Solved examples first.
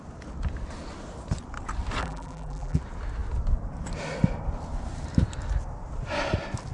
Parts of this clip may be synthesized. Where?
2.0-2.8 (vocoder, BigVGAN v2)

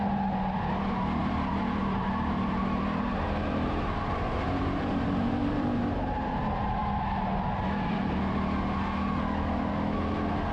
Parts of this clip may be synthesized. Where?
1.2-5.8 (vocoder, BigVGAN v2)

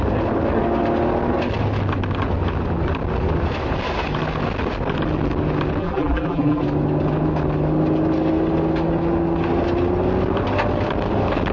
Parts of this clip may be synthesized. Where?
5.8-6.6 (vocoder, BigVGAN v2)

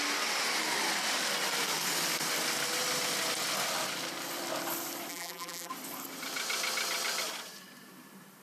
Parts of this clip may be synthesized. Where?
5.1-5.7 (vocoder, BigVGAN v2)

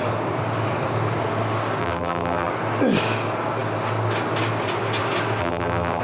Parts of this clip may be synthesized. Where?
1.8-2.5 (vocoder, BigVGAN v2); 5.4-6.0

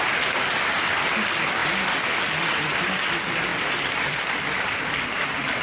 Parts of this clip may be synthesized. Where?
3.5-4.8 (vocoder, BigVGAN v2)